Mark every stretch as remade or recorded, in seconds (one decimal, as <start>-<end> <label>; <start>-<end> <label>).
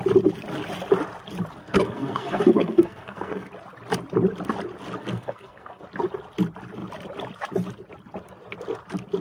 0.0-1.6 recorded; 1.6-3.5 remade; 3.5-5.0 recorded; 5.0-5.8 remade; 5.8-9.2 recorded